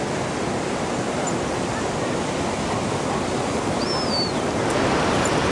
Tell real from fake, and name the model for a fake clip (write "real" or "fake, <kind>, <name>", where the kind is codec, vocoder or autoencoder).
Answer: real